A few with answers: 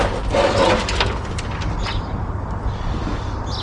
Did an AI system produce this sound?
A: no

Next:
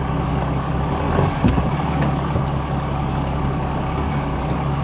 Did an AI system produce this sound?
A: yes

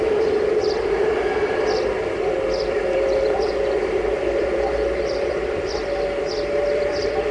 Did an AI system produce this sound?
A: yes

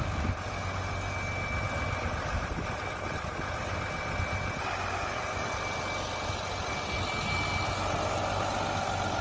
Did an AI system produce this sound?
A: no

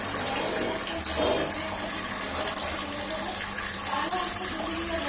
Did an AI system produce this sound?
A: no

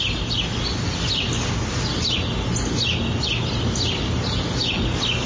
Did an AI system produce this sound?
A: no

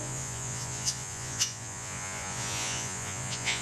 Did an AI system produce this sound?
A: yes